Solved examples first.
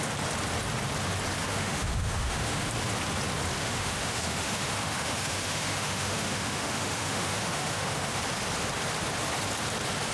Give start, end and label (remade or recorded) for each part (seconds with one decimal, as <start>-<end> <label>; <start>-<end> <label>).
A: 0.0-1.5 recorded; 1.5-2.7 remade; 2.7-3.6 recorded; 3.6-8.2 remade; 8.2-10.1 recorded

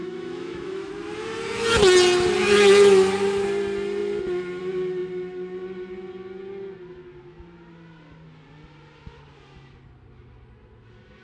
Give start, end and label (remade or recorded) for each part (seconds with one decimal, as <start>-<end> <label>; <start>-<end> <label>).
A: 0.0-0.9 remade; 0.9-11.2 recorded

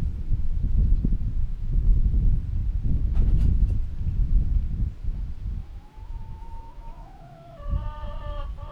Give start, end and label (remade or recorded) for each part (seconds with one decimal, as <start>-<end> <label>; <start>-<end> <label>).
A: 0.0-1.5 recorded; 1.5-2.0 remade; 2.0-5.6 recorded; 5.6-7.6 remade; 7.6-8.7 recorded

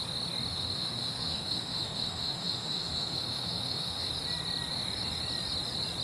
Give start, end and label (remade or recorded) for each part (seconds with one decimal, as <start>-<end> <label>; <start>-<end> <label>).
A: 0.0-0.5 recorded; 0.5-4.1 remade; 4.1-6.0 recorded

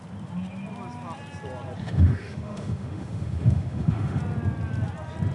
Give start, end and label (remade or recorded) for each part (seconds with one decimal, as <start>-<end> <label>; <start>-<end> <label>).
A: 0.0-1.8 recorded; 1.8-4.2 remade; 4.2-5.3 recorded

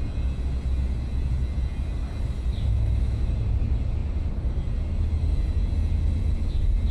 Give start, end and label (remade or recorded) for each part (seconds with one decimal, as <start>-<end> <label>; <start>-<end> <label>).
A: 0.0-2.7 recorded; 2.7-3.3 remade; 3.3-6.9 recorded

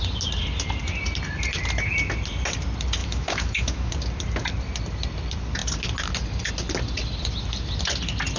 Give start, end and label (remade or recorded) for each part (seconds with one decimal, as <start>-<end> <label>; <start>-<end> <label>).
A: 0.0-3.0 recorded; 3.0-3.9 remade; 3.9-8.4 recorded

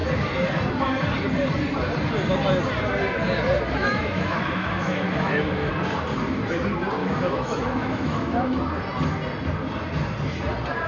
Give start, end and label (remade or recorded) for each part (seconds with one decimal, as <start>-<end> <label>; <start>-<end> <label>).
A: 0.0-3.8 recorded; 3.8-5.7 remade; 5.7-7.0 recorded; 7.0-8.6 remade; 8.6-10.9 recorded